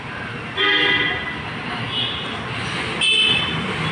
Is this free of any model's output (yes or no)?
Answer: yes